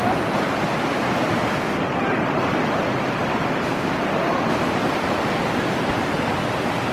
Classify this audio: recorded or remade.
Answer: recorded